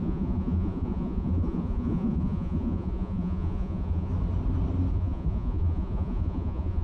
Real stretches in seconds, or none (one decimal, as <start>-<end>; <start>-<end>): 4.1-4.9